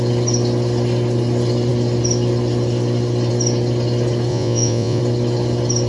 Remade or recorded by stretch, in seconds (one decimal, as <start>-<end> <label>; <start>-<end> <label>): 0.0-4.3 recorded; 4.3-5.0 remade; 5.0-5.9 recorded

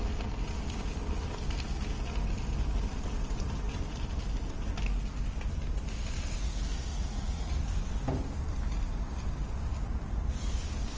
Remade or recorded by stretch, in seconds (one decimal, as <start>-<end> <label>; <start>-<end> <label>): 0.0-6.9 recorded; 6.9-7.6 remade; 7.6-11.0 recorded

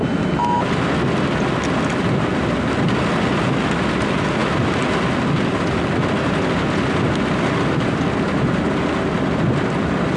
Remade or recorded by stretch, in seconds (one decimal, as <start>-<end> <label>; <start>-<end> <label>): 0.0-10.2 recorded

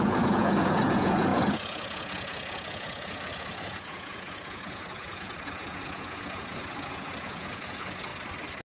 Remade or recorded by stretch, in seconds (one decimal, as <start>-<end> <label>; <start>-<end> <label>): 0.0-8.1 remade; 8.1-8.7 recorded

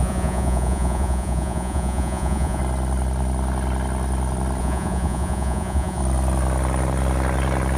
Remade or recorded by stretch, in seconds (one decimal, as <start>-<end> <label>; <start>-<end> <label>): 0.0-2.6 remade; 2.6-4.6 recorded; 4.6-6.0 remade; 6.0-7.8 recorded

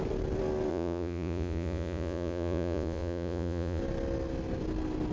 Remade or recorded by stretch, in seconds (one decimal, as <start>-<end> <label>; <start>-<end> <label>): 0.0-0.7 recorded; 0.7-3.8 remade; 3.8-5.1 recorded